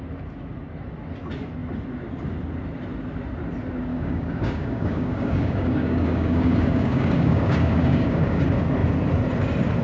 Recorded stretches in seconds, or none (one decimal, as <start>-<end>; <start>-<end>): 0.0-3.9; 8.4-9.8